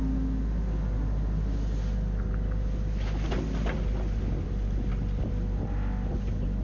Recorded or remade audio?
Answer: recorded